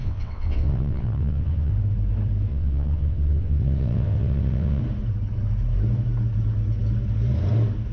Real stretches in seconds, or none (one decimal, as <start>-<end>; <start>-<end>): 1.7-2.5; 4.8-7.9